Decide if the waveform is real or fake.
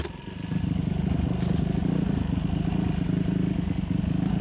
real